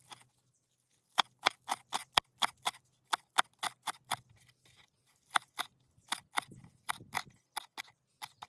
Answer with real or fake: real